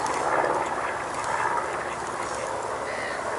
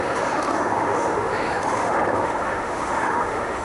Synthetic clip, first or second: second